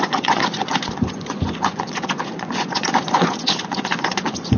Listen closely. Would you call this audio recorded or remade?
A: remade